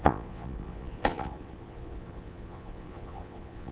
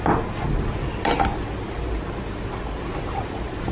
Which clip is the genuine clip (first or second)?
second